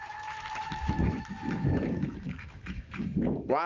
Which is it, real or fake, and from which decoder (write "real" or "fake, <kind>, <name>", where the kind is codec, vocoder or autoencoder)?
fake, autoencoder, DAC-VAE